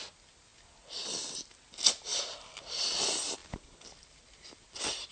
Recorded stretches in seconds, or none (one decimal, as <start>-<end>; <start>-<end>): 0.0-2.1; 2.8-3.4; 4.6-5.1

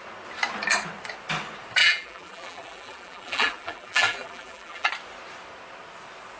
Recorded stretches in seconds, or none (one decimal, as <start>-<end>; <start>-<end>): 0.0-1.8; 4.9-6.4

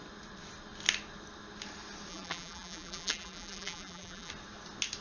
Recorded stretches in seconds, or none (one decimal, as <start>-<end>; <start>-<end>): 0.0-2.1; 4.3-5.0

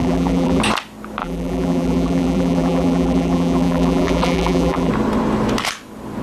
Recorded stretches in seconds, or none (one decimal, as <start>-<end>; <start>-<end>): 0.6-1.2; 4.9-6.2

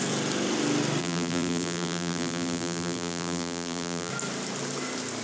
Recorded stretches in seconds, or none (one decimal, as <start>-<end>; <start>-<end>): 0.0-1.0; 4.1-5.2